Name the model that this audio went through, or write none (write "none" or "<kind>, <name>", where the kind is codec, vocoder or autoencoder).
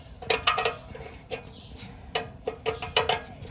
none